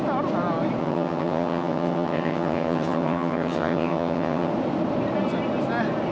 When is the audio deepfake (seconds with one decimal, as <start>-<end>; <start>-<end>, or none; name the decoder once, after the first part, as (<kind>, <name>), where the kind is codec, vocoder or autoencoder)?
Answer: 0.8-4.5 (vocoder, HiFi-GAN)